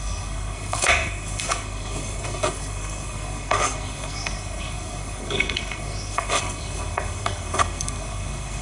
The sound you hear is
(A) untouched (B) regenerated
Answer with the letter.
B